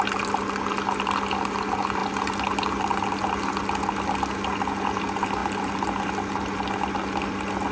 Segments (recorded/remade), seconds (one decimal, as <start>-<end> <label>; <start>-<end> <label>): 0.0-7.7 recorded